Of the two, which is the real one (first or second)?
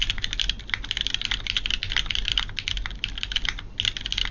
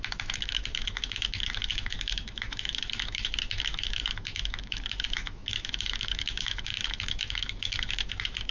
first